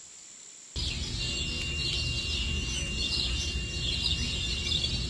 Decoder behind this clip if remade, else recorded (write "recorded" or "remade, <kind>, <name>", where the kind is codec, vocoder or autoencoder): recorded